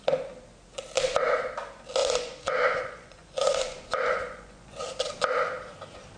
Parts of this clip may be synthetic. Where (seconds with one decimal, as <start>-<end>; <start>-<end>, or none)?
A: 2.0-4.8